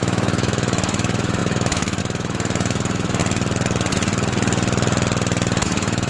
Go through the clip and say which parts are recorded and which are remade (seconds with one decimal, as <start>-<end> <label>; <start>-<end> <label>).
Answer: 0.0-3.2 remade; 3.2-5.6 recorded; 5.6-6.1 remade